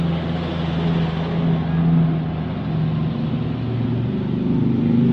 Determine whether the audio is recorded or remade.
recorded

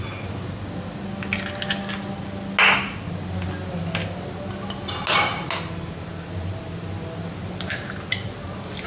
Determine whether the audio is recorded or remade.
recorded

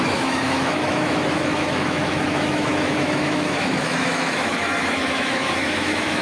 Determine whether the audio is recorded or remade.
remade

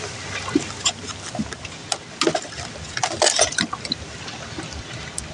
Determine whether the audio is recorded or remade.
recorded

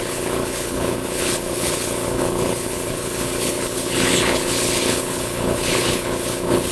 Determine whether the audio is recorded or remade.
remade